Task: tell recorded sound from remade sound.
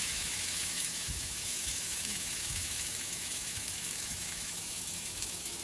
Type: remade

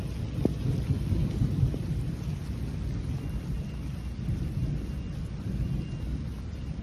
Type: recorded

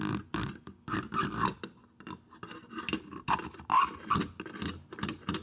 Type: recorded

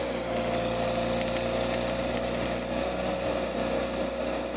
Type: recorded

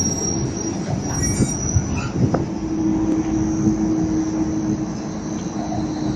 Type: recorded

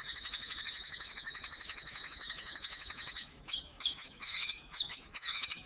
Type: remade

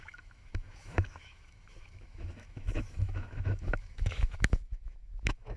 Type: remade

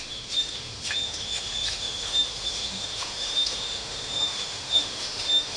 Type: remade